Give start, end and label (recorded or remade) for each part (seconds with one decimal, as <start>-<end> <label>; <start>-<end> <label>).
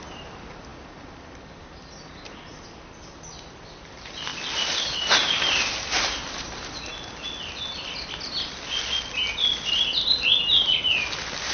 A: 0.0-11.5 recorded